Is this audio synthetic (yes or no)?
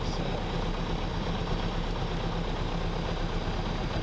no